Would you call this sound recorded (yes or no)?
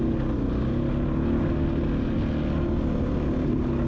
yes